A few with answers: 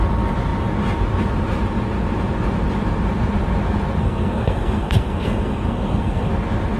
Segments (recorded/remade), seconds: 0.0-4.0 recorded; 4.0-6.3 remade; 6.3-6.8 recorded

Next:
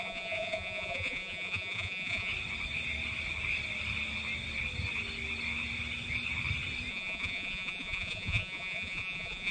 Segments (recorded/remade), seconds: 0.0-2.3 remade; 2.3-6.9 recorded; 6.9-9.5 remade

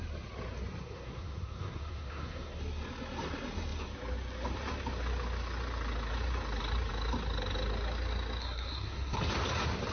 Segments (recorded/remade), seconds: 0.0-0.8 recorded; 0.8-2.6 remade; 2.6-8.4 recorded; 8.4-9.2 remade; 9.2-9.9 recorded

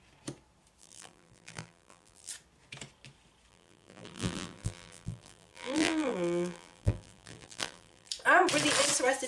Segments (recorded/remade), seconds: 0.0-0.8 recorded; 0.8-2.3 remade; 2.3-3.5 recorded; 3.5-8.1 remade; 8.1-9.3 recorded